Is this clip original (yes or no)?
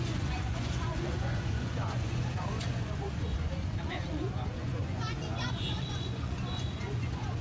no